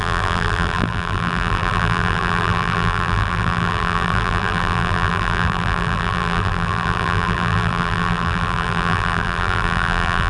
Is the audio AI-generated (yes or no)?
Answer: yes